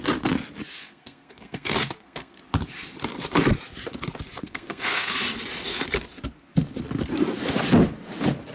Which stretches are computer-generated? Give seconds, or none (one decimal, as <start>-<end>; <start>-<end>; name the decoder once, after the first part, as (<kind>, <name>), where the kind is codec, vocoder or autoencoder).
0.8-2.4 (codec, SNAC); 4.4-5.2